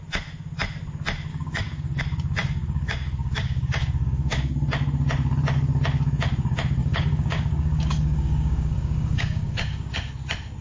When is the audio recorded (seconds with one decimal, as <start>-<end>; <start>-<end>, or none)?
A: 0.0-1.3; 2.0-2.4; 4.5-6.8; 10.1-10.6